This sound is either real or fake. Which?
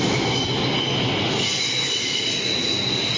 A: real